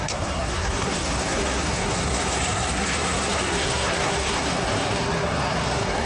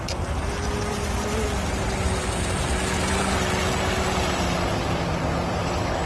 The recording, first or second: second